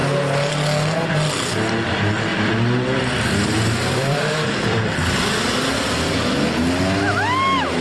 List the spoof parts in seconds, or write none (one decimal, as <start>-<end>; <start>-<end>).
2.3-5.7